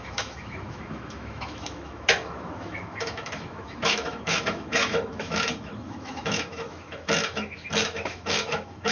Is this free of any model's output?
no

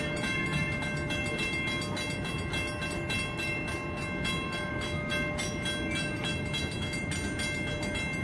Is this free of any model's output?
yes